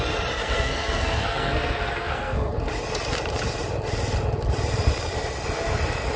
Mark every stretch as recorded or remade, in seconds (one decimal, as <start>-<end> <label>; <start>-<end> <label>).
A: 0.0-0.4 recorded; 0.4-2.5 remade; 2.5-6.2 recorded